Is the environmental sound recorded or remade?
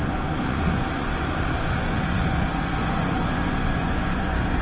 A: remade